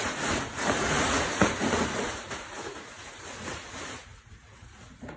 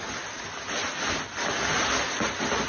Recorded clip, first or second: second